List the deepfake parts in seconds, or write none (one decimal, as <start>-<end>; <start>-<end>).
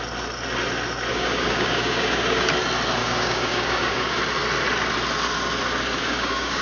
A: 1.1-2.5; 3.0-4.2; 6.0-6.6